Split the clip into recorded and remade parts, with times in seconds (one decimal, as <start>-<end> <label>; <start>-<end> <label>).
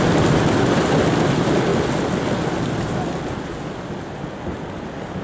0.0-5.2 recorded